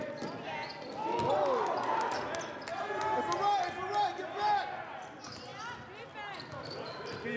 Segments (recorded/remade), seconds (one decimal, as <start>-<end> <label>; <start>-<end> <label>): 0.0-7.4 recorded